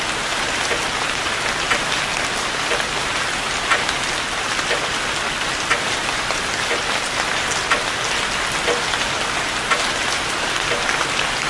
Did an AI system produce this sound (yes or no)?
no